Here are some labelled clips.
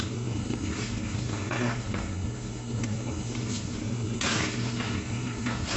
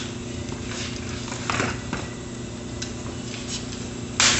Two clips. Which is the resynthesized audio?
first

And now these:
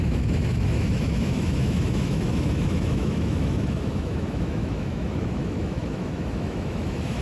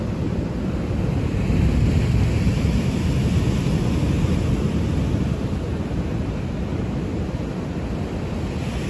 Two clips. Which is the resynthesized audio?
first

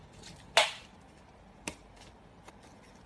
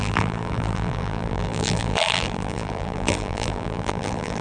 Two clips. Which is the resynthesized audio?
second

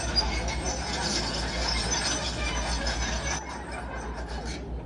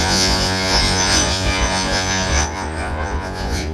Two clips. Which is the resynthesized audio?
second